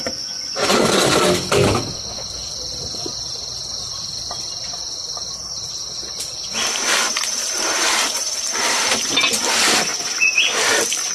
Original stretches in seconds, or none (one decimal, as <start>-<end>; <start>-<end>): 0.8-11.1